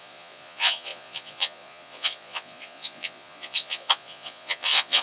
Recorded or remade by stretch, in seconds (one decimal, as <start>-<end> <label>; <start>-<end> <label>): 0.0-5.0 remade